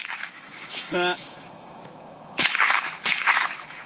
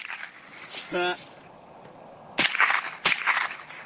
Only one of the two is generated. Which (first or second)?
first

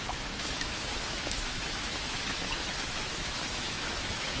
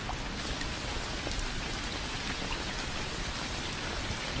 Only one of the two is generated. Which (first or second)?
first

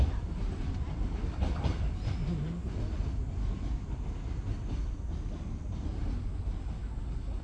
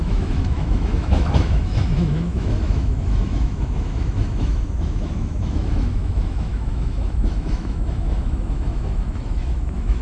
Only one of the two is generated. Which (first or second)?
second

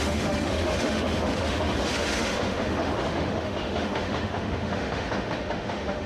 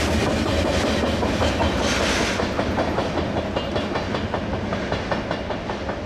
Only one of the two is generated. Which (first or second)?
first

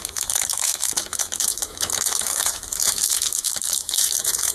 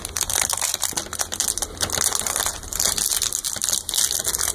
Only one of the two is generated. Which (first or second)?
first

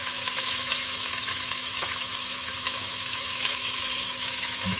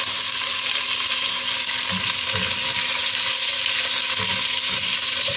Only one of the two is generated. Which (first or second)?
first